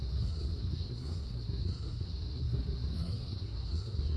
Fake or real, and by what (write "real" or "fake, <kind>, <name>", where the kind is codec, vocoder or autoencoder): fake, codec, SNAC